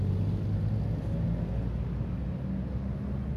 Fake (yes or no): no